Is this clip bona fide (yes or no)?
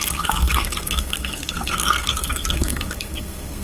no